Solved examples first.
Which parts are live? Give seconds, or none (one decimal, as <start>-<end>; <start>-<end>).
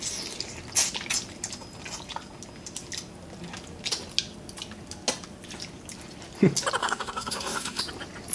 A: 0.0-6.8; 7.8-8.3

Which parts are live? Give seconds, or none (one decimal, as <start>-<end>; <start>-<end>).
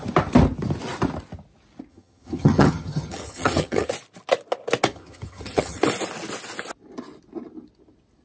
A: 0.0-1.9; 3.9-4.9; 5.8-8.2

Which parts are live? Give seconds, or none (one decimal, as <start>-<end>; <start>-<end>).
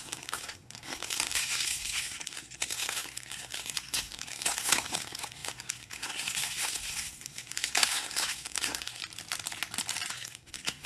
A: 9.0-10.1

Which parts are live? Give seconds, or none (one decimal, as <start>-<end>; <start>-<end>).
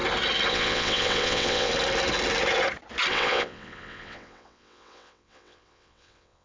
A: 0.0-0.5; 1.7-3.1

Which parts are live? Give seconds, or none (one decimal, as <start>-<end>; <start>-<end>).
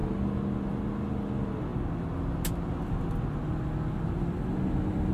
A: 0.0-5.1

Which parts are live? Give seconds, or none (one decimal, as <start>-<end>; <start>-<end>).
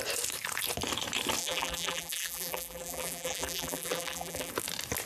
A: 0.0-1.4; 4.5-5.1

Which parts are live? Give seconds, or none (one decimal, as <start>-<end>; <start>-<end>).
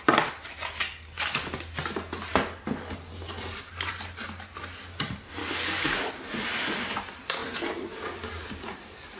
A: 0.0-5.4; 6.1-9.2